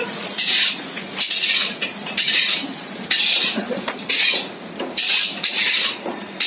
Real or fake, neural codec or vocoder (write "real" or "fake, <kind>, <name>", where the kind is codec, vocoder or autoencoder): fake, vocoder, Vocos